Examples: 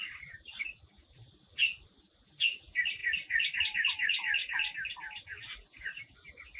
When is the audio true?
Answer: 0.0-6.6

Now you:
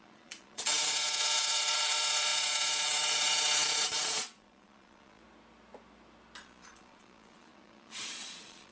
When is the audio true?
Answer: 5.2-6.4

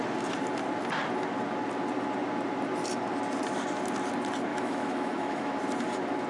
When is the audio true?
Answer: 0.0-4.5; 5.6-6.3

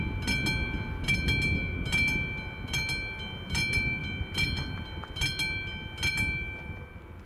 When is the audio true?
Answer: 0.0-7.3

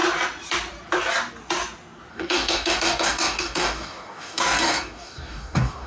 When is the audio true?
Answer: 0.0-2.1

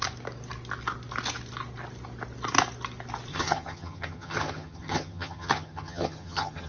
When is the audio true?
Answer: 0.0-3.3